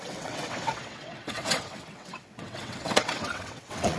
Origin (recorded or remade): remade